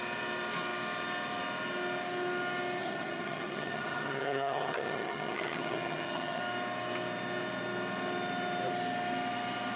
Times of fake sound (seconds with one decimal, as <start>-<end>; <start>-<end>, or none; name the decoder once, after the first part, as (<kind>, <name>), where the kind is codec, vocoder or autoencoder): 2.8-6.4 (vocoder, HiFi-GAN)

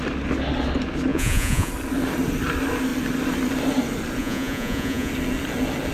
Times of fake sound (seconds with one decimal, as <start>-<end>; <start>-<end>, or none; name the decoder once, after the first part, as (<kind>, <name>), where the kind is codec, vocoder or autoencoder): 1.1-1.7 (vocoder, Vocos); 4.2-5.1

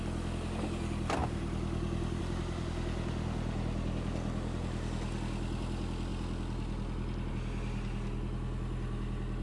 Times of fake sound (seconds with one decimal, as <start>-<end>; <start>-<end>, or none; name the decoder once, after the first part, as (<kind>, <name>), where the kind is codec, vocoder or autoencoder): none

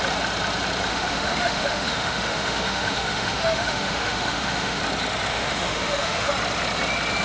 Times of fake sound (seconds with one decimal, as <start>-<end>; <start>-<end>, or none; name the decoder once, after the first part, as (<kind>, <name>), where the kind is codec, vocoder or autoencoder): 0.9-4.8 (autoencoder, DAC-VAE); 5.3-6.3

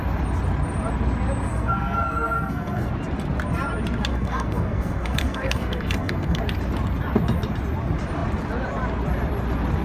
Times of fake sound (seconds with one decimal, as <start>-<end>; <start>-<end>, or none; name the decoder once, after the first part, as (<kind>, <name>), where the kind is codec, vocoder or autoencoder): 1.5-2.9 (codec, SNAC); 4.1-6.4